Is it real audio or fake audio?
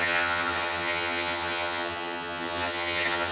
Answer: fake